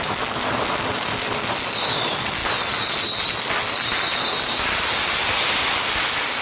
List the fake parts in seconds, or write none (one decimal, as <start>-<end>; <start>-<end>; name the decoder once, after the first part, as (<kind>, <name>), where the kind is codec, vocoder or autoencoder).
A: none